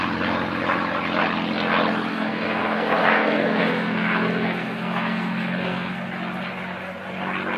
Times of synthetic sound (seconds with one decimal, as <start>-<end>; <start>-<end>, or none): 2.1-6.1